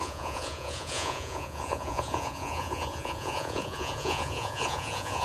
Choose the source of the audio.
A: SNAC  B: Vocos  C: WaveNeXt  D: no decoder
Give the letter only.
B